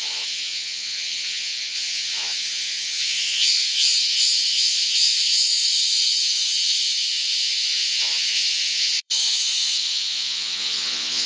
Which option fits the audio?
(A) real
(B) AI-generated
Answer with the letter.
B